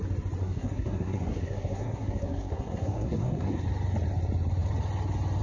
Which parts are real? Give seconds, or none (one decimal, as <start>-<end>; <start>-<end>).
0.0-0.4; 3.6-5.4